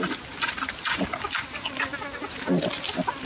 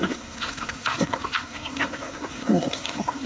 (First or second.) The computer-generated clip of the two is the second